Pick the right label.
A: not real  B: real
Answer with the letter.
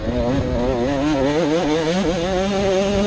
B